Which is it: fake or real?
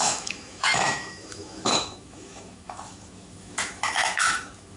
fake